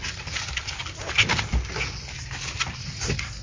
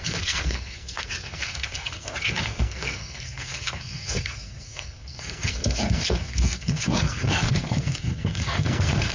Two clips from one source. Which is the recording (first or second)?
first